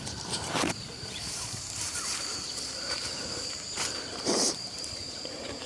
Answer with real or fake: fake